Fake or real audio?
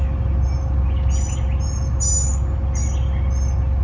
real